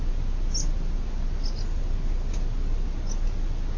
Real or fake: real